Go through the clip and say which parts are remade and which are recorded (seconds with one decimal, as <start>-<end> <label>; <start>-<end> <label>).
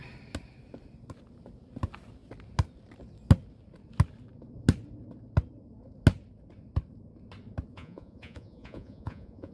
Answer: 0.0-7.7 recorded; 7.7-9.5 remade